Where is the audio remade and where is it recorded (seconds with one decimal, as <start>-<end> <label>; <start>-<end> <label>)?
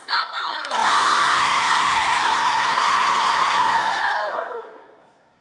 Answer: 0.0-5.4 remade